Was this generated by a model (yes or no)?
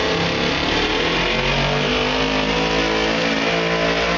no